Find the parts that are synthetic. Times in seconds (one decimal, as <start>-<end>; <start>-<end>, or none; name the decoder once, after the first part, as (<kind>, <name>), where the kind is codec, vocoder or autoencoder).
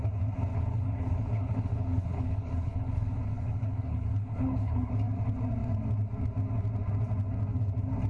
0.5-4.9 (codec, HILCodec)